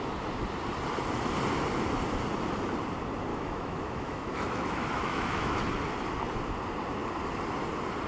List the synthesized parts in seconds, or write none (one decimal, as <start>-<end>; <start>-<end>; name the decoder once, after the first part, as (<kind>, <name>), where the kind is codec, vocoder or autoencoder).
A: 3.3-5.7 (autoencoder, DAC-VAE)